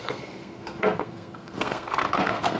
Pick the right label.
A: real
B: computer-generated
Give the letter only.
B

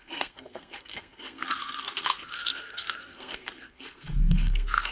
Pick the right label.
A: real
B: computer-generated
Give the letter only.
B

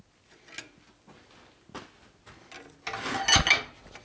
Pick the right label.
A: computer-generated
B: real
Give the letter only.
B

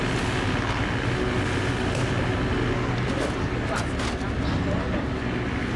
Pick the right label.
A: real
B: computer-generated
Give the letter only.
A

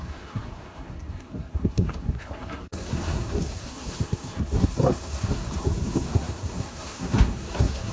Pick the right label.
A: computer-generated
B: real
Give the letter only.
A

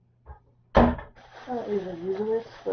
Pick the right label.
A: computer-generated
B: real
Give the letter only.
B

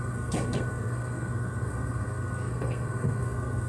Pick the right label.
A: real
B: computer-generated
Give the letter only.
B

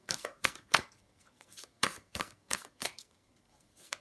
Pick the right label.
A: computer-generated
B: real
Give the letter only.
A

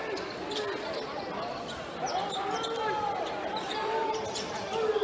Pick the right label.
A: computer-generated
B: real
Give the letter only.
B